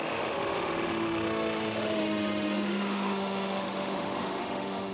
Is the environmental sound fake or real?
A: fake